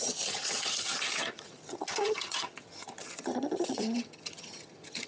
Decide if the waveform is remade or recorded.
remade